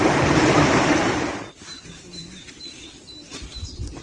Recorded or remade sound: recorded